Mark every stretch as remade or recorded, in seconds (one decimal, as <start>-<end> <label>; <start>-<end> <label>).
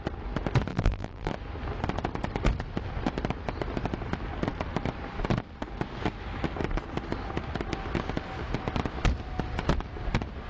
0.0-0.7 recorded; 0.7-1.3 remade; 1.3-10.5 recorded